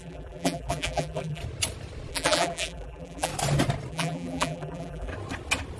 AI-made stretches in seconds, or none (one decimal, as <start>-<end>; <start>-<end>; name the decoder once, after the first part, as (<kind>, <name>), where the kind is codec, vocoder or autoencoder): 0.0-1.4 (vocoder, BigVGAN v2); 2.1-3.3; 3.9-5.1

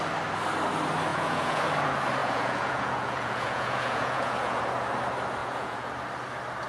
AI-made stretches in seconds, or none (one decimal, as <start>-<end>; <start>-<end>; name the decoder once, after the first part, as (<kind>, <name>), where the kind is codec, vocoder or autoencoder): 1.1-1.6 (vocoder, Vocos); 2.2-4.6; 5.4-5.9

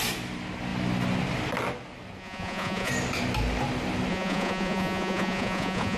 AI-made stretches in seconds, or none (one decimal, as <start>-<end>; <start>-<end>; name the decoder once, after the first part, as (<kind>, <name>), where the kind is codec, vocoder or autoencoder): 2.2-2.9 (vocoder, Vocos); 4.1-6.0

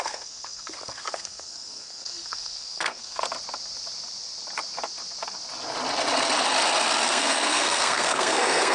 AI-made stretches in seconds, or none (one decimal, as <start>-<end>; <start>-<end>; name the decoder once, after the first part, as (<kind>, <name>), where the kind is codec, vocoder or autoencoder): 0.0-3.2 (codec, SNAC); 7.1-8.7

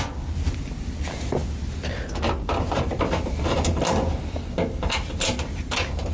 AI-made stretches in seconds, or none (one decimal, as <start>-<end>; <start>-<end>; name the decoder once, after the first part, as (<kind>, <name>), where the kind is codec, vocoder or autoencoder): none

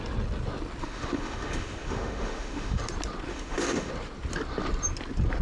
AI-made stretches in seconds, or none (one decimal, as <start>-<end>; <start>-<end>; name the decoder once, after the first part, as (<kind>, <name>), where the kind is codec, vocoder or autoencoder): 0.8-2.8 (autoencoder, DAC-VAE); 3.3-3.9

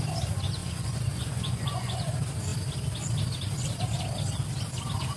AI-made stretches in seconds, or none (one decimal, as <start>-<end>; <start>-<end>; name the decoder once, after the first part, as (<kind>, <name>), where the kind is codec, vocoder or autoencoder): 0.6-2.1 (vocoder, Vocos)